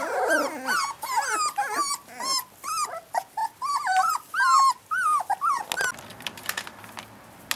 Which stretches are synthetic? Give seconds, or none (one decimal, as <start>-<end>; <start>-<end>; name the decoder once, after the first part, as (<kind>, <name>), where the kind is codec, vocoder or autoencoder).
3.4-4.1 (vocoder, BigVGAN v2); 6.1-6.8